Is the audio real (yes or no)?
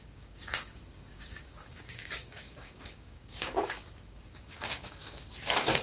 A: no